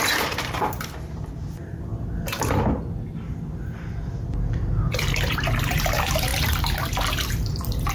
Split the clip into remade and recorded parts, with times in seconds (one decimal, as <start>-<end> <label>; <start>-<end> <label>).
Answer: 0.0-1.9 remade; 1.9-5.3 recorded; 5.3-6.3 remade; 6.3-7.3 recorded; 7.3-7.9 remade